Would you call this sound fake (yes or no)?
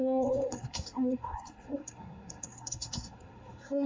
yes